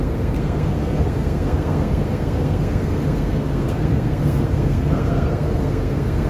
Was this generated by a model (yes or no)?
yes